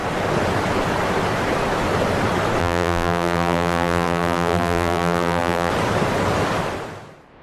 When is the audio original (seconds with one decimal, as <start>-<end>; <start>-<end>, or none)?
0.0-2.6; 5.7-7.4